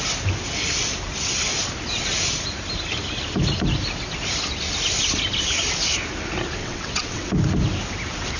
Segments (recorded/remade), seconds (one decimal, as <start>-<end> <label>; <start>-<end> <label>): 0.0-6.6 recorded; 6.6-7.3 remade; 7.3-8.4 recorded